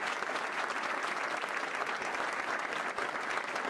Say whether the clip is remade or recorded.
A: recorded